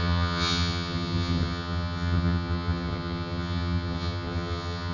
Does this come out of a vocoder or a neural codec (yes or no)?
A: yes